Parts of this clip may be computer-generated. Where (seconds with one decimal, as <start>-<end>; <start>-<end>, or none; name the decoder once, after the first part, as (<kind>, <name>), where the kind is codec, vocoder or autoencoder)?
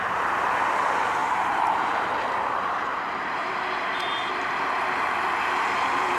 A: 0.0-6.2 (vocoder, BigVGAN v2)